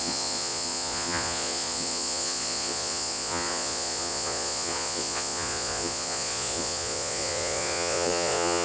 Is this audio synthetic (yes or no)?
yes